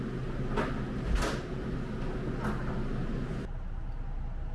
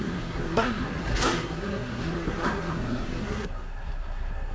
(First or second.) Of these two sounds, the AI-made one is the second